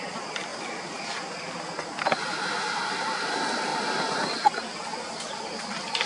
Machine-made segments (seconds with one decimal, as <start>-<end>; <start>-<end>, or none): none